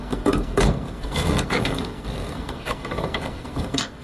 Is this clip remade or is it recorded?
remade